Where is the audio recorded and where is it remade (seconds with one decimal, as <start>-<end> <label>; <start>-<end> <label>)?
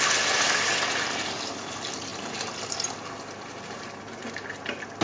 0.0-5.0 recorded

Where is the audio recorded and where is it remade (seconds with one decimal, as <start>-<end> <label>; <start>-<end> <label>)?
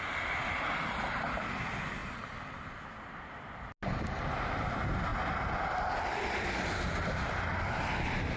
0.0-2.0 recorded; 2.0-3.5 remade; 3.5-5.1 recorded; 5.1-8.4 remade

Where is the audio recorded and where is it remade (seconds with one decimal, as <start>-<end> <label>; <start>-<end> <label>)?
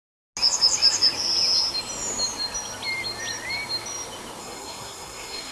0.0-4.4 recorded; 4.4-5.5 remade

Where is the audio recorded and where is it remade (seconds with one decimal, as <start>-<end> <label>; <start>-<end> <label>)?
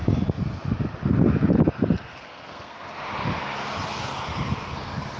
0.0-2.2 recorded; 2.2-2.8 remade; 2.8-5.2 recorded